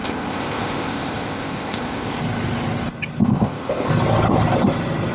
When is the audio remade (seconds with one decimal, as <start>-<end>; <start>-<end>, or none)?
0.0-2.2; 3.2-3.9